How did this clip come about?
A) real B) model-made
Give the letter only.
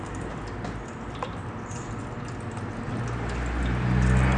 A